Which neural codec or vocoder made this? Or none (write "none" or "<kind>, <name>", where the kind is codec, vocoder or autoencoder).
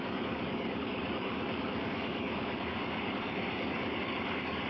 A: codec, DAC